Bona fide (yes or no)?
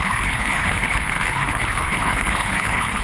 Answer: no